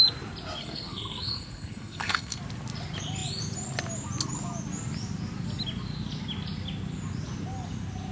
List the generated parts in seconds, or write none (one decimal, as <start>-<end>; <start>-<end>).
0.6-2.4